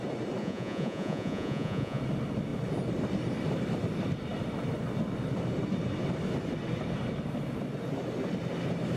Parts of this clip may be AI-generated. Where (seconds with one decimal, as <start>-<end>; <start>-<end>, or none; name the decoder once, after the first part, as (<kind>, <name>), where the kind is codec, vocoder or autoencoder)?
0.4-2.0 (vocoder, Vocos)